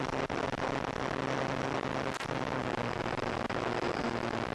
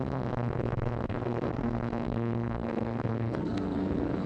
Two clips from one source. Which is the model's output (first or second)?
second